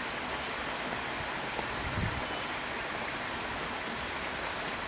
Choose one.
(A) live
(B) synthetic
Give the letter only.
A